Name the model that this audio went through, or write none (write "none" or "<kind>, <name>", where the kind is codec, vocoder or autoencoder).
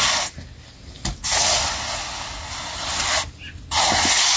none